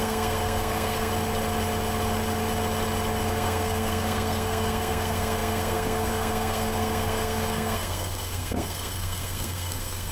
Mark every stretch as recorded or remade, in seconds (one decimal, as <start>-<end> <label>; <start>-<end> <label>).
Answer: 0.0-1.1 remade; 1.1-3.3 recorded; 3.3-10.1 remade